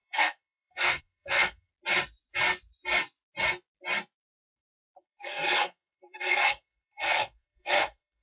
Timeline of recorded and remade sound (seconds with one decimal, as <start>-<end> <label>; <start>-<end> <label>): 0.0-1.7 remade; 1.7-4.2 recorded; 4.2-8.2 remade